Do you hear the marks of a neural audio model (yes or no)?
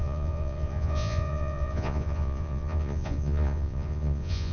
yes